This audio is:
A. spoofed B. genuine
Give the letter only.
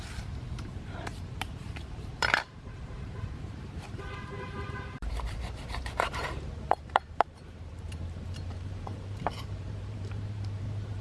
A